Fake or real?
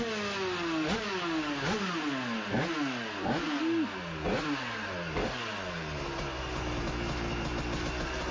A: real